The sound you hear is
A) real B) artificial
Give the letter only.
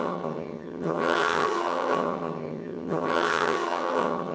B